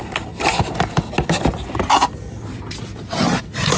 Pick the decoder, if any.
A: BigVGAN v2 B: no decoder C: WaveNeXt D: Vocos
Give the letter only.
B